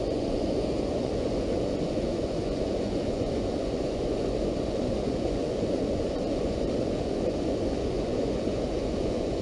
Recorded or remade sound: remade